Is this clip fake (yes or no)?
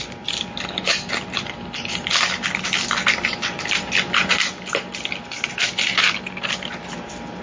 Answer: no